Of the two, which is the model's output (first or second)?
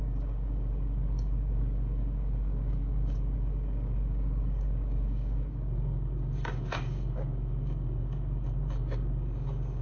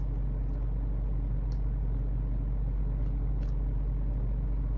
first